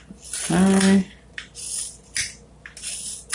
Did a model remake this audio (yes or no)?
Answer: no